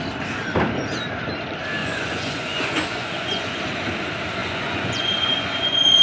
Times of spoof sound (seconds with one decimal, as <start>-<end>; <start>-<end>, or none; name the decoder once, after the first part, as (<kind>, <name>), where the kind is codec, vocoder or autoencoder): 1.8-3.6 (vocoder, Vocos); 4.4-6.0